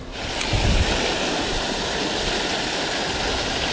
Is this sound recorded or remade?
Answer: recorded